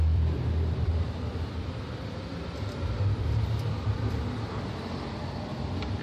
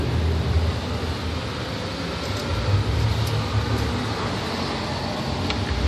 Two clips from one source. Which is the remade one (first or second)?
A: first